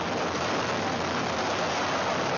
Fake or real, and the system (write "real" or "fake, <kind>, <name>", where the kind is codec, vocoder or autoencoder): real